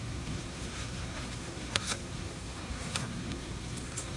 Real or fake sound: fake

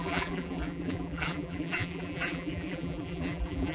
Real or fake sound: fake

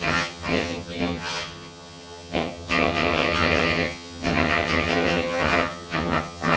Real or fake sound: fake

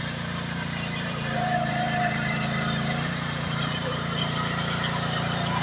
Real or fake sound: fake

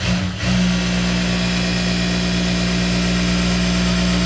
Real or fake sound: real